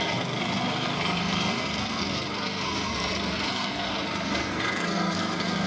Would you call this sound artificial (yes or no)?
yes